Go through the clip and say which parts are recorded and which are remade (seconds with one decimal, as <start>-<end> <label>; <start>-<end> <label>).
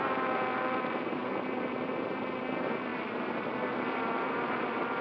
0.0-1.2 recorded; 1.2-1.8 remade; 1.8-2.9 recorded; 2.9-5.0 remade